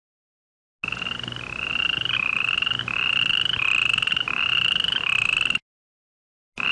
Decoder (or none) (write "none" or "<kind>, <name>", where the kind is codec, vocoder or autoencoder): none